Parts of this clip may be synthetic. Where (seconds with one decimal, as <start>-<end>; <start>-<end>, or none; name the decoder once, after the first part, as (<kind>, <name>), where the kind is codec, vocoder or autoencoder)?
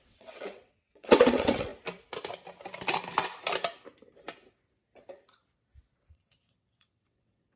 0.0-1.7 (vocoder, WaveNeXt); 6.1-7.6